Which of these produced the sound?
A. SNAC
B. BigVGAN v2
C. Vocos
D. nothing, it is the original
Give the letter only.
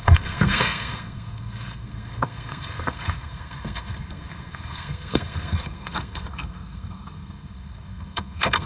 A